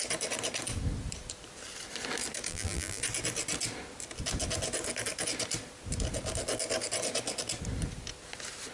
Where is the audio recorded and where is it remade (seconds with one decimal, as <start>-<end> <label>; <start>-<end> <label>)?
0.0-2.5 recorded; 2.5-3.0 remade; 3.0-8.7 recorded